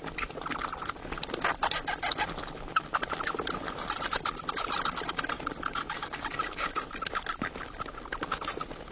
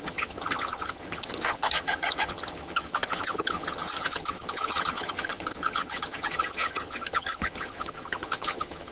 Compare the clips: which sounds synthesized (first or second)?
second